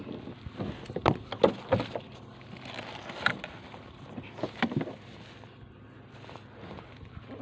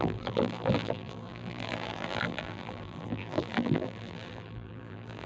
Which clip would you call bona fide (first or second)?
first